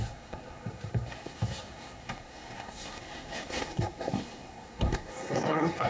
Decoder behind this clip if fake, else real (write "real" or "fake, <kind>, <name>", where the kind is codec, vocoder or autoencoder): fake, codec, SNAC